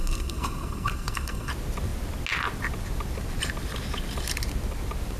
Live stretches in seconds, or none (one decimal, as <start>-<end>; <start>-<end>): 1.5-5.2